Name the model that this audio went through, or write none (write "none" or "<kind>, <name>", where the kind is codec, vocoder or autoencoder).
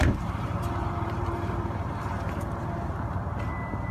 vocoder, BigVGAN v2